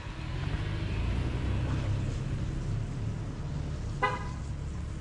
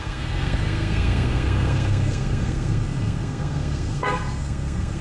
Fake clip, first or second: second